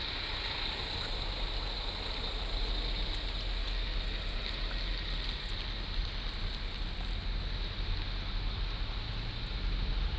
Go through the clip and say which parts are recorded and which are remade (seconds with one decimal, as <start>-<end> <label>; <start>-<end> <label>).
0.0-10.2 recorded